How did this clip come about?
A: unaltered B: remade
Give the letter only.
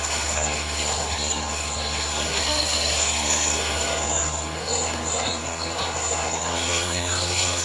B